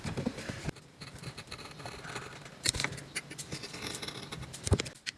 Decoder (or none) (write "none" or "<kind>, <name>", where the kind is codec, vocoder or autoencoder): vocoder, BigVGAN v2